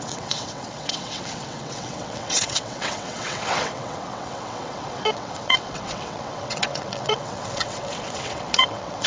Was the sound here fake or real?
fake